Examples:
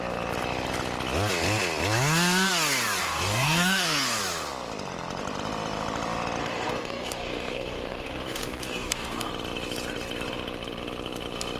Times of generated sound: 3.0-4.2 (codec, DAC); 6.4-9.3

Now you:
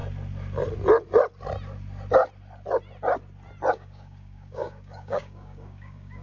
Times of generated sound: 3.7-6.2 (codec, DAC)